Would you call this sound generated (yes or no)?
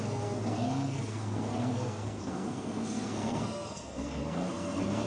yes